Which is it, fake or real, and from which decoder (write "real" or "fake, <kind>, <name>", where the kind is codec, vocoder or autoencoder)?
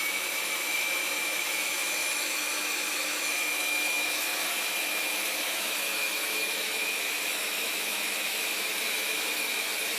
fake, autoencoder, DAC-VAE